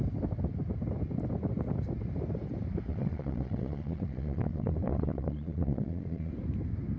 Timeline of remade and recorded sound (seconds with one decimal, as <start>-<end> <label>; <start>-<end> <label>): 0.0-2.9 recorded; 2.9-6.3 remade; 6.3-7.0 recorded